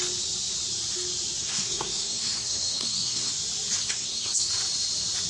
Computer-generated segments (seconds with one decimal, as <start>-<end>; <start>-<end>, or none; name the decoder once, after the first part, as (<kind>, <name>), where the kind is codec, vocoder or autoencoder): 1.4-3.3 (codec, SNAC); 3.8-4.5